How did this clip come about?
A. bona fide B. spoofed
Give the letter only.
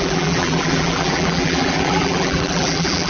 B